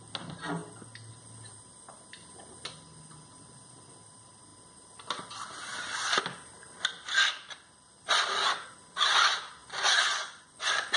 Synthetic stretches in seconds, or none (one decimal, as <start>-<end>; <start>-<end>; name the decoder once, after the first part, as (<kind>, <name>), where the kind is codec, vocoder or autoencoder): 9.6-11.0 (vocoder, Vocos)

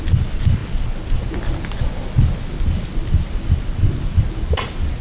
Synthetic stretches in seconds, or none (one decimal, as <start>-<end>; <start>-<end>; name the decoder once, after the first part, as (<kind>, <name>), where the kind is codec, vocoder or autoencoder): none

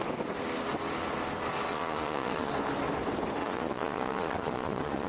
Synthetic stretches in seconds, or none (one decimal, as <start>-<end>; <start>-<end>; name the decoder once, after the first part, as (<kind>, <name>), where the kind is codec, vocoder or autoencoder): 1.7-2.5 (vocoder, Vocos); 3.4-5.1

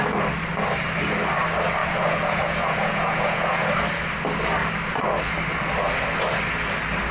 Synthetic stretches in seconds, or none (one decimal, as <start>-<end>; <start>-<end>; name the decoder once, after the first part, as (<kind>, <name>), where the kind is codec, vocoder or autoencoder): 1.8-3.7 (vocoder, Vocos)

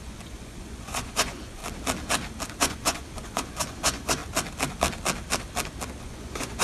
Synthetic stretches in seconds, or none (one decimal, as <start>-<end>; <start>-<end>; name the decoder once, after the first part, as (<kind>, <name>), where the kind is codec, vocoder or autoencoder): 0.0-1.6 (vocoder, Vocos); 2.6-4.2; 6.0-6.6

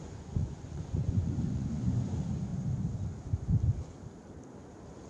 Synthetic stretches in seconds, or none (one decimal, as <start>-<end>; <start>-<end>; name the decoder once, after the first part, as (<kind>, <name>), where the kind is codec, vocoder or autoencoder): 0.0-2.5 (vocoder, Vocos)

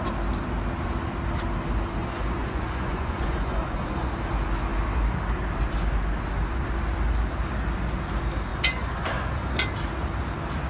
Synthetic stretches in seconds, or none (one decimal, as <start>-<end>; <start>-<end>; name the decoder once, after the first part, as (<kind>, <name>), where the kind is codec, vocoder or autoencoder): 2.0-4.1 (vocoder, Vocos); 8.5-9.2